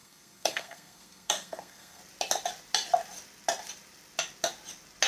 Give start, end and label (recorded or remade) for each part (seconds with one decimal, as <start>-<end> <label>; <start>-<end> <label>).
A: 0.0-2.0 remade; 2.0-5.1 recorded